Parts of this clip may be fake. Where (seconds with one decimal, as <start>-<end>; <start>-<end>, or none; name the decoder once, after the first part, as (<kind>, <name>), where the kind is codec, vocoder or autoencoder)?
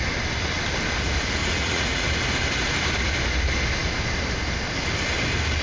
1.4-2.1 (vocoder, Vocos)